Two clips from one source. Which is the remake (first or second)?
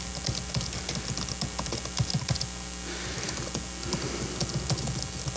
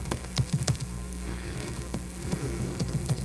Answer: second